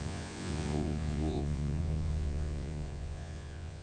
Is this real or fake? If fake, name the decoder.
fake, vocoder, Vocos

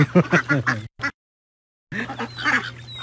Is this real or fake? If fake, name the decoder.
real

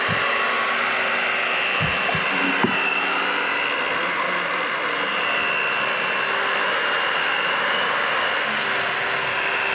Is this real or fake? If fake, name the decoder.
real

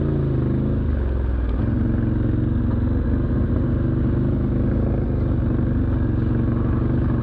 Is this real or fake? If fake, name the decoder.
real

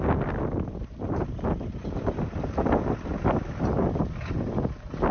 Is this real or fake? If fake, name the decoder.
real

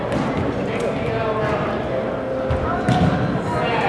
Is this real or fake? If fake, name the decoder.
real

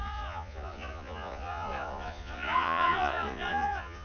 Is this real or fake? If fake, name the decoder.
fake, vocoder, Vocos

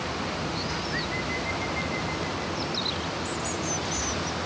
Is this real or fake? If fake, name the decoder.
real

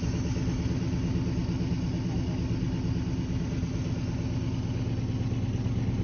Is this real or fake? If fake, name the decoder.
real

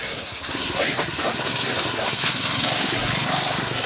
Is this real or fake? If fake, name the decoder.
fake, codec, SNAC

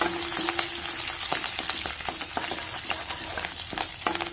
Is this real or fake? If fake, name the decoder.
real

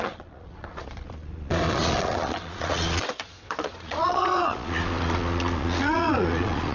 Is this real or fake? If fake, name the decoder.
fake, vocoder, Vocos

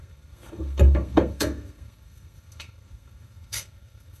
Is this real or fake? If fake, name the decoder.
fake, codec, SNAC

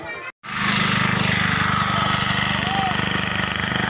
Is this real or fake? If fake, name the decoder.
real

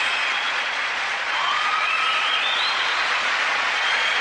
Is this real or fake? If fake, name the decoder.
fake, vocoder, Vocos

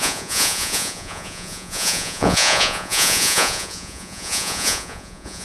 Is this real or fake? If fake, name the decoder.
fake, vocoder, Vocos